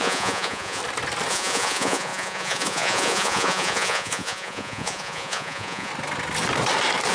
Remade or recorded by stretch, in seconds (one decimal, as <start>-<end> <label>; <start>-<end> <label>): 0.0-0.8 remade; 0.8-1.3 recorded; 1.3-5.9 remade; 5.9-7.1 recorded